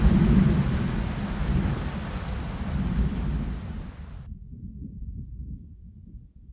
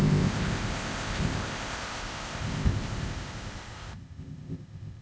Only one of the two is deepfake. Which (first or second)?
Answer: second